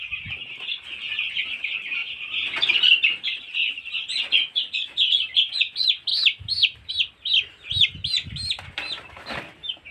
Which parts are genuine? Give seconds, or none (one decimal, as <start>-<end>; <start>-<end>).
0.0-2.0; 5.6-6.1; 6.9-9.9